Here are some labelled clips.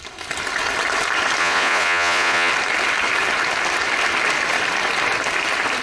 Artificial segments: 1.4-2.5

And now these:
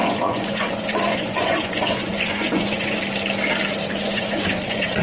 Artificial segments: 0.0-3.0; 4.0-5.0

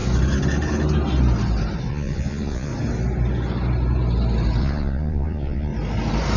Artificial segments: 1.9-2.7; 4.6-5.7

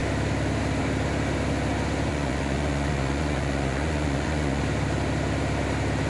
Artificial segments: 2.1-4.6